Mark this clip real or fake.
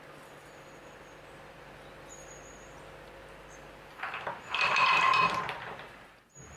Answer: fake